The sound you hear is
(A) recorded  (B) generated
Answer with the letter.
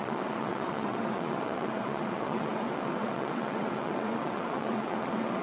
B